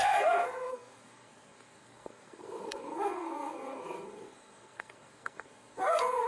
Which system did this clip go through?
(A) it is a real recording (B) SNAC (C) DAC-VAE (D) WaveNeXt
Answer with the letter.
B